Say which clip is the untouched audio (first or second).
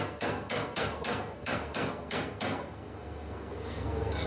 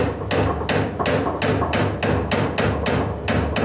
second